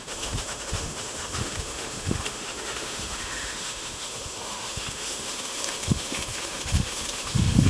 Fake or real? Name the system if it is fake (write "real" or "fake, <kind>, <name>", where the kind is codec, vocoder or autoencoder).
fake, autoencoder, DAC-VAE